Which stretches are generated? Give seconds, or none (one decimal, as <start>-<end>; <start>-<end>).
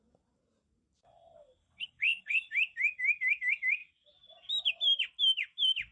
1.6-2.5